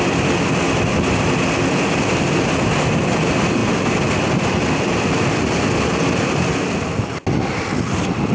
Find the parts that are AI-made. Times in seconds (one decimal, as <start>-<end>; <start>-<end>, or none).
none